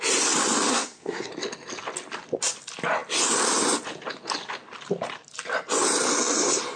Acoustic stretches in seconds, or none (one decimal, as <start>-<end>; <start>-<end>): 0.0-0.7; 1.3-6.8